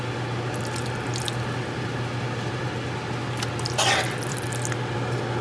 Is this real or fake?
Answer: real